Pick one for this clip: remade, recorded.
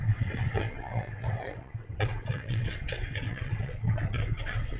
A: remade